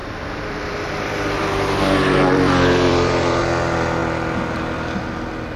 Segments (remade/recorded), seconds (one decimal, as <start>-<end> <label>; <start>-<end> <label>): 0.0-3.4 remade; 3.4-5.6 recorded